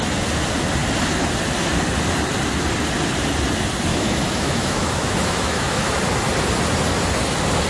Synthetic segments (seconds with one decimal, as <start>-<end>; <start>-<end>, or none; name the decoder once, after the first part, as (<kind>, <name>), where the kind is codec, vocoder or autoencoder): 3.9-6.0 (autoencoder, DAC-VAE)